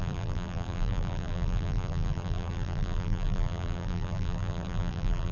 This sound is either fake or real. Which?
fake